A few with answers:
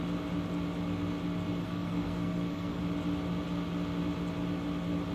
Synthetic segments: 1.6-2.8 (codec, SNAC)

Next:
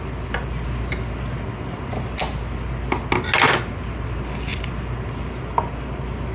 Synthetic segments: none

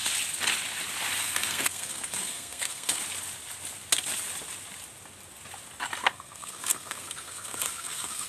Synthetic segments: 1.2-3.0 (codec, SNAC); 6.0-8.3

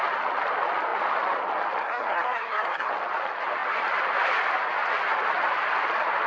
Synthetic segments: 1.8-2.9 (codec, SNAC)

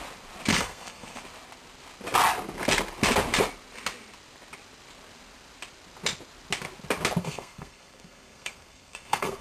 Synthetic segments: 0.5-1.2 (codec, SNAC); 7.2-9.4

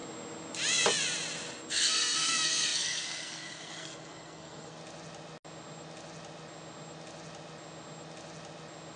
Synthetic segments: 1.7-4.8 (codec, SNAC)

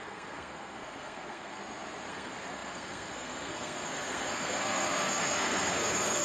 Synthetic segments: 0.0-1.6 (codec, SNAC); 2.1-6.2

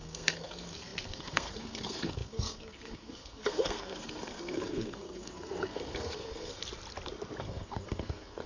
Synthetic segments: 0.0-6.6 (codec, SNAC); 7.4-8.5